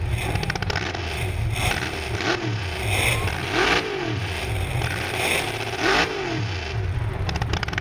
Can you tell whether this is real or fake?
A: fake